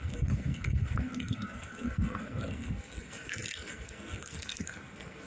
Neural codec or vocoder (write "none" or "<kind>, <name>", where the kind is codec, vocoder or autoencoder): codec, SNAC